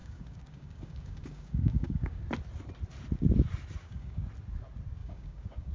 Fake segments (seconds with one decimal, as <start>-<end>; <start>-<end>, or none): 0.0-2.2; 3.8-4.3; 5.0-5.7